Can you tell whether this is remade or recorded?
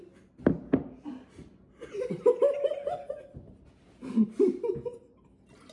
recorded